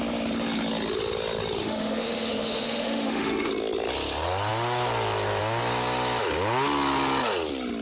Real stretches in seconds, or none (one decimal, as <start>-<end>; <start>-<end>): 0.0-1.6; 3.5-7.8